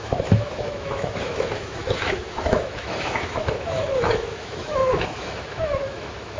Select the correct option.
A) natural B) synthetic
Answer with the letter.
B